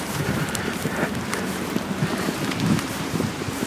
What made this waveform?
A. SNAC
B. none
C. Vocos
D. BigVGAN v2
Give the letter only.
D